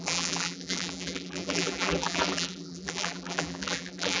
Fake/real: fake